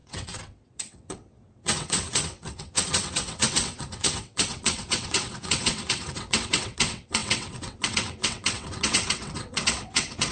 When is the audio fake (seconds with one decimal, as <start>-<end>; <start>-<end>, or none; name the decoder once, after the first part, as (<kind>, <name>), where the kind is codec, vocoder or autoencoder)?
0.0-10.3 (vocoder, WaveNeXt)